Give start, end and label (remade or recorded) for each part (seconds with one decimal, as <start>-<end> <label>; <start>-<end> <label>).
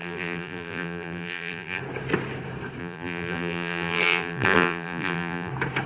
0.0-1.8 remade; 1.8-2.8 recorded; 2.8-5.5 remade; 5.5-5.9 recorded